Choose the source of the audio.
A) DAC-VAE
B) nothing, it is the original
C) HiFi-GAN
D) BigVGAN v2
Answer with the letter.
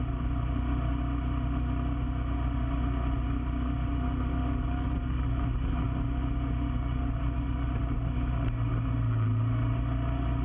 B